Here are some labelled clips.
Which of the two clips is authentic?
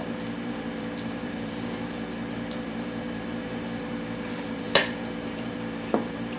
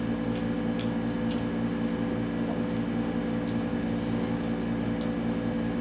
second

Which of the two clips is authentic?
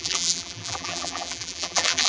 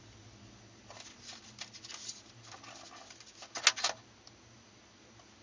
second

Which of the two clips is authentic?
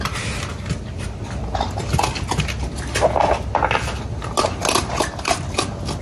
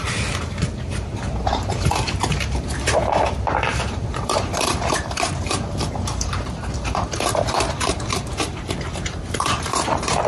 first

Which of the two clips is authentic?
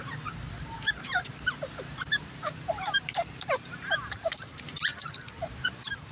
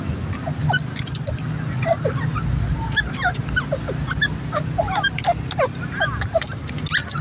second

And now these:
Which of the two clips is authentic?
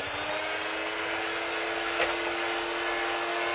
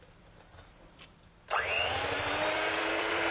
first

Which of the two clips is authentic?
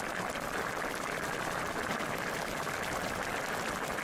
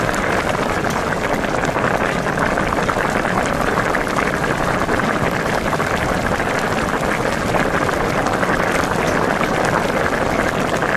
first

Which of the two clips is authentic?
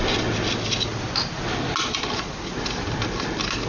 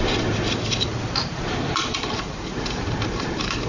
first